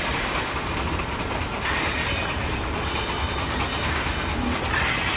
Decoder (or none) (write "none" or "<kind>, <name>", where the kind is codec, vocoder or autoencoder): vocoder, BigVGAN v2